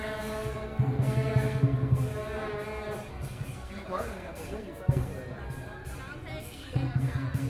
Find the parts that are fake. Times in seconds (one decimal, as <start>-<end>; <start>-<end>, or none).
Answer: 0.0-2.1; 3.1-5.1; 6.4-7.5